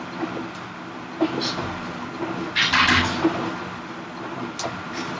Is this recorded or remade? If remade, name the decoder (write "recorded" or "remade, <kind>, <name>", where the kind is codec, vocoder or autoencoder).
recorded